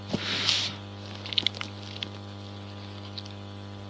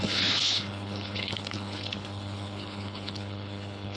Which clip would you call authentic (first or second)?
first